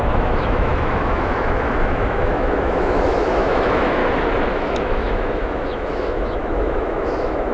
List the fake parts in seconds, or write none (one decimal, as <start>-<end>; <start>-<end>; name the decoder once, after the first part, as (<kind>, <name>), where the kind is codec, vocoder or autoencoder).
0.0-4.0 (autoencoder, DAC-VAE); 4.5-7.5